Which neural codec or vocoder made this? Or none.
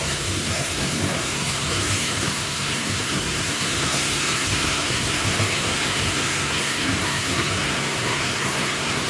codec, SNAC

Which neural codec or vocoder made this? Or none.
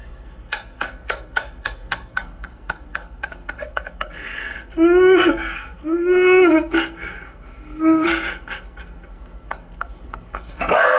codec, SNAC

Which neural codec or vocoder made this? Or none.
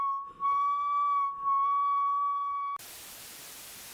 none